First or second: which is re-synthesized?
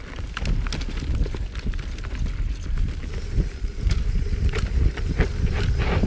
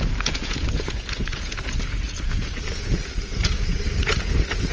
second